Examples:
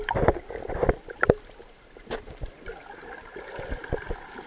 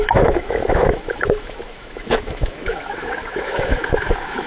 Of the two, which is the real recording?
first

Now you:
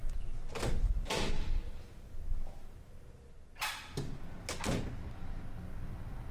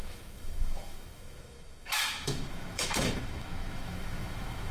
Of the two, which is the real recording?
first